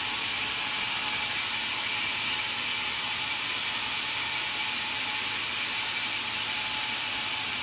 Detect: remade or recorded remade